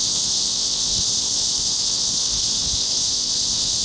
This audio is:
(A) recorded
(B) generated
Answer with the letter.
B